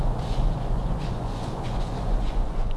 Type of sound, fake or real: fake